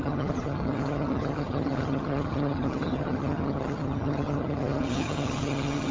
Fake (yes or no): yes